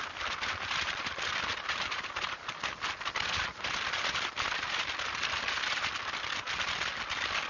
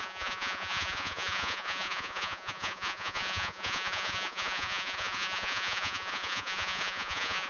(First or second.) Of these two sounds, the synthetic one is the second